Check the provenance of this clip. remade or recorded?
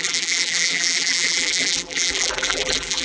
remade